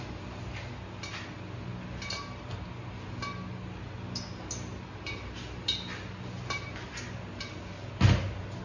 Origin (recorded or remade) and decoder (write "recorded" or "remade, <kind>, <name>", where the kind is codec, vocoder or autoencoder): recorded